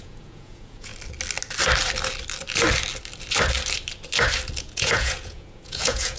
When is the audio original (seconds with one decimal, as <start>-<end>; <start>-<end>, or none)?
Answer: 0.9-4.6